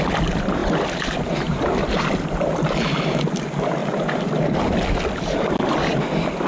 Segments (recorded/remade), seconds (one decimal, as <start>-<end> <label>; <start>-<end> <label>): 0.0-6.5 recorded